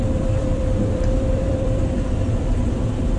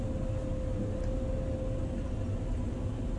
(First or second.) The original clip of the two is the second